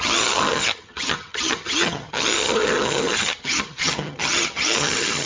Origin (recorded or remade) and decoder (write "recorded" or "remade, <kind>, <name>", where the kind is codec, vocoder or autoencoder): remade, vocoder, HiFi-GAN